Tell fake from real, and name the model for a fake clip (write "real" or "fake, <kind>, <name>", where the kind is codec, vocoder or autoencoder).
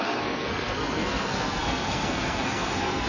fake, codec, SNAC